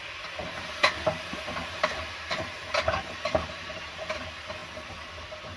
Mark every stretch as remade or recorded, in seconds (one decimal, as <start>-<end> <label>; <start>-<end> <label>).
0.0-0.4 recorded; 0.4-3.8 remade; 3.8-5.6 recorded